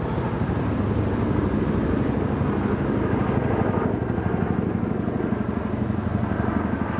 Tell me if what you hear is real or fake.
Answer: real